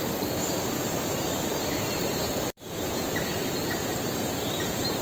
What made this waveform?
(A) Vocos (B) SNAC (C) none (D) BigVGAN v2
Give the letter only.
D